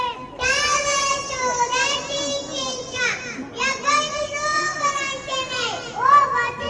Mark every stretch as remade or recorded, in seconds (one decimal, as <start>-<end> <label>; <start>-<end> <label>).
0.0-4.5 recorded; 4.5-5.0 remade; 5.0-6.7 recorded